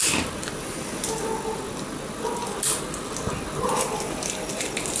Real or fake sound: real